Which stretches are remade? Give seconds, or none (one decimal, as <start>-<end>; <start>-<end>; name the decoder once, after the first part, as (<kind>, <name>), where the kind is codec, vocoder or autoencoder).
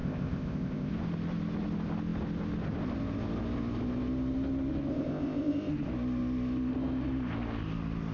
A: 0.0-0.9 (codec, ZipCodec); 4.9-5.7